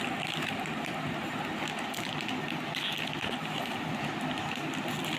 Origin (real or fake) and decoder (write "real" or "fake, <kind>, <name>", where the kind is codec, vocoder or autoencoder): real